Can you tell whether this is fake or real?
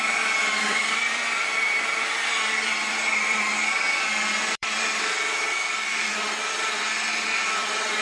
fake